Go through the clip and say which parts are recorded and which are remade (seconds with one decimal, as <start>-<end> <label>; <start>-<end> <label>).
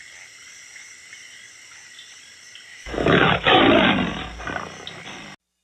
0.0-2.7 recorded; 2.7-3.6 remade; 3.6-5.6 recorded